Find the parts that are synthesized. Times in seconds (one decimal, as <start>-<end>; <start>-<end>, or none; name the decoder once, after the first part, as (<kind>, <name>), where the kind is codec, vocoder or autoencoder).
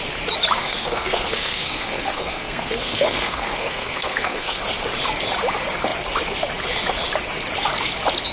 0.6-4.6 (codec, SNAC)